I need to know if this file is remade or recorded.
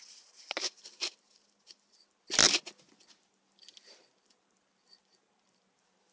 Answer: recorded